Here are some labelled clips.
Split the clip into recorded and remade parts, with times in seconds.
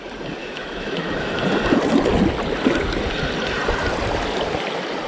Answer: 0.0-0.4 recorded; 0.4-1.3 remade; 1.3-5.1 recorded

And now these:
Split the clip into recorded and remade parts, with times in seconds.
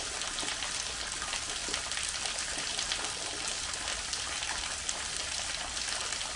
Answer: 0.0-6.4 recorded